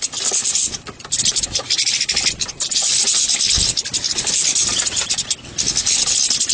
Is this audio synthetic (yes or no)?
no